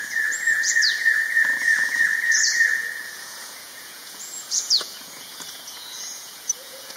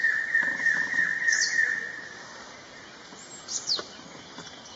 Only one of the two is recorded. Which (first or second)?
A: second